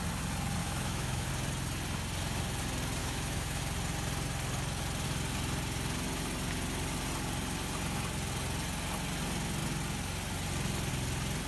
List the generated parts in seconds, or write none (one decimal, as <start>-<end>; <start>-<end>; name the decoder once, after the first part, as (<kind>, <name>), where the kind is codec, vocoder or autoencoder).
0.6-1.3 (autoencoder, DAC-VAE); 3.0-3.6